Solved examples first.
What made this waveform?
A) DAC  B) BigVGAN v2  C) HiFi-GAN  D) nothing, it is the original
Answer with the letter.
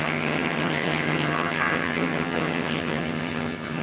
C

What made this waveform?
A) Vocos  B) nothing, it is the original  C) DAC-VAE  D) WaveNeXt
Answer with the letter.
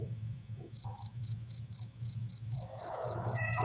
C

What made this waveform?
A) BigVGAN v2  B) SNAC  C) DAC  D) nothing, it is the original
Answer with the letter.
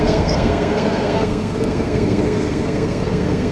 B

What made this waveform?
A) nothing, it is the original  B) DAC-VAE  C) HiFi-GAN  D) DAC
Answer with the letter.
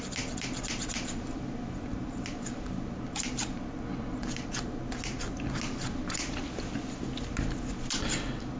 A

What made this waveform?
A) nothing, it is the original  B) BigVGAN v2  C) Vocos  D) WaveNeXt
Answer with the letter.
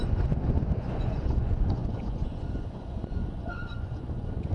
C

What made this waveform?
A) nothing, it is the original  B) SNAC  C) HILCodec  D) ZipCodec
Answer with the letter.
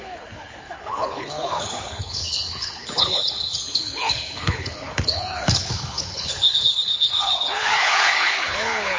C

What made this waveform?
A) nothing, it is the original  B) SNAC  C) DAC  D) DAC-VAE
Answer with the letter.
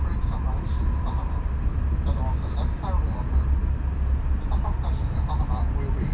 A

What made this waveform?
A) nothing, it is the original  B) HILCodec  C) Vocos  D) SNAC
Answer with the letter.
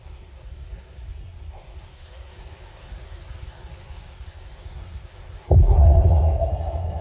D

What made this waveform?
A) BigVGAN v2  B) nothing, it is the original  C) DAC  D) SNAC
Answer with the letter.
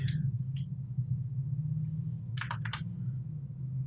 B